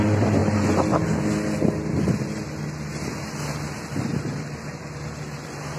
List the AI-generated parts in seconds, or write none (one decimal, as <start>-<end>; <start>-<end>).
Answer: none

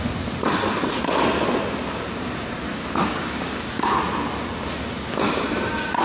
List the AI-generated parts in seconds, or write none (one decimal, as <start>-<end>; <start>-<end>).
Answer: 2.7-4.0

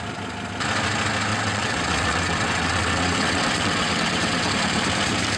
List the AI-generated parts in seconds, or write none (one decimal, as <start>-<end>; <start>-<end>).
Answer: 1.3-4.5

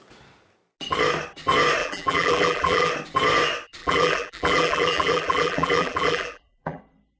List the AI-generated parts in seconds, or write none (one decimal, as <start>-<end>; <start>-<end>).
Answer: 1.8-2.9; 3.8-6.8

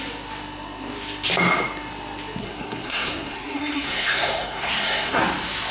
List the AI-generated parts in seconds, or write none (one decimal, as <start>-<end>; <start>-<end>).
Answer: 2.4-5.2

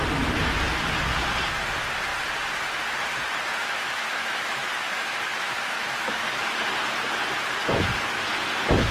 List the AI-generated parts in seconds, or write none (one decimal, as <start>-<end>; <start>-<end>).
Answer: 3.6-6.7

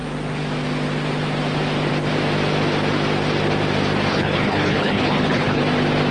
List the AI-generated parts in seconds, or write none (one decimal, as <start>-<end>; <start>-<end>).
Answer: 4.1-5.6

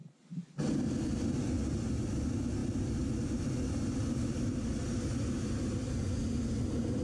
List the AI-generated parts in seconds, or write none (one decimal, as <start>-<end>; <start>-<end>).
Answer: 0.0-0.7